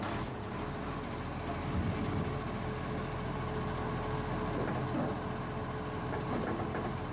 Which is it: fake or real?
real